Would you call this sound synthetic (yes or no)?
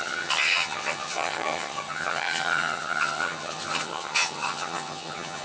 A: yes